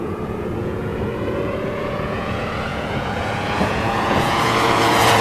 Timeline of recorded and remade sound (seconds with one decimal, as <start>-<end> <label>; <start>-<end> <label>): 0.0-5.2 remade